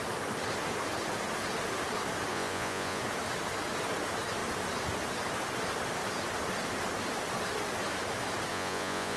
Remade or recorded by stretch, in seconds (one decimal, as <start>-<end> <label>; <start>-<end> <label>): 0.0-2.3 recorded; 2.3-3.0 remade; 3.0-8.5 recorded; 8.5-9.2 remade